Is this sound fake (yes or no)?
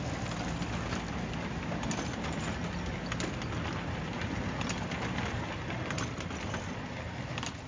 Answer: no